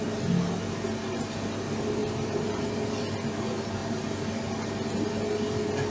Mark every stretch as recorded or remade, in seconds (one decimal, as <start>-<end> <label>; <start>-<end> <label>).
0.0-2.0 recorded; 2.0-2.7 remade; 2.7-3.8 recorded; 3.8-4.3 remade; 4.3-5.9 recorded